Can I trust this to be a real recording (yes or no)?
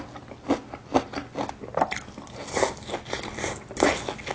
yes